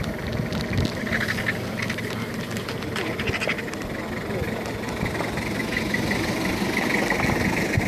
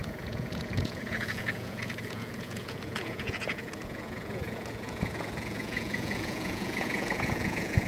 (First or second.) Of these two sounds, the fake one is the second